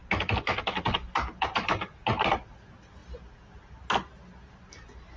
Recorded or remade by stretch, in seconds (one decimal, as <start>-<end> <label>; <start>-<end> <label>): 0.0-5.2 recorded